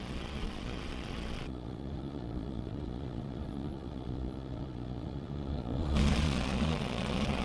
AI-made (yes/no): yes